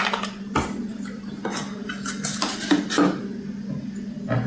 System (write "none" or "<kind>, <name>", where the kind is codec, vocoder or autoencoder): none